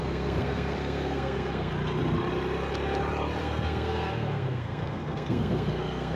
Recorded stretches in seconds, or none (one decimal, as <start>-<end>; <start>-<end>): 1.7-3.4